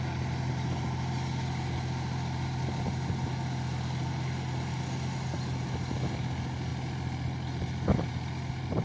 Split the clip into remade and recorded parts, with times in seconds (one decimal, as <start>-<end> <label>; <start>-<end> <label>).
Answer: 0.0-8.8 recorded